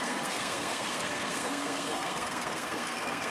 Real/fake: fake